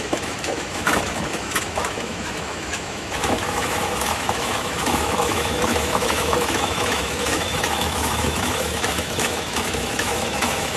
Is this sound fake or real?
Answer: fake